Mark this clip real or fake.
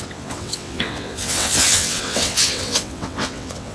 fake